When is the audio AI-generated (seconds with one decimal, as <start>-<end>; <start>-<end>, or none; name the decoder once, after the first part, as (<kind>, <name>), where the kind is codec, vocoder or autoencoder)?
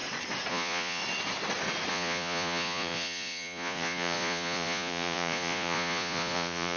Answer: 0.5-1.0 (vocoder, Vocos); 1.9-6.8